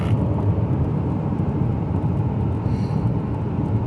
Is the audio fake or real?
real